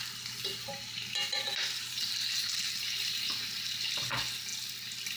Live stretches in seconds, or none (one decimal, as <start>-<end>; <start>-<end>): 0.0-0.5; 3.6-5.2

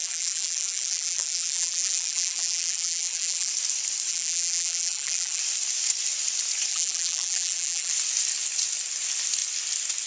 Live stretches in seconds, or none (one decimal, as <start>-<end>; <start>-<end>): 3.5-4.1; 5.4-6.7; 7.9-10.1

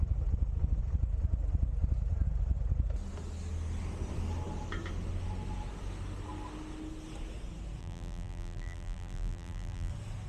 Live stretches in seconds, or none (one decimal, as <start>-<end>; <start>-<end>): 0.0-7.8; 9.9-10.3

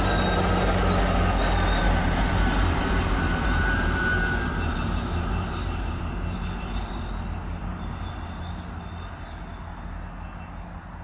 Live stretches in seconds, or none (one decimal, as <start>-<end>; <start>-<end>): 0.0-1.8; 7.0-7.6; 8.1-11.0

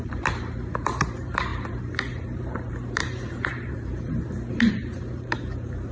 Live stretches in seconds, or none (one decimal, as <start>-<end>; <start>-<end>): none